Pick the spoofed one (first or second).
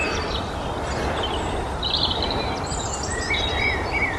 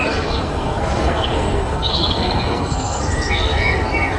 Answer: second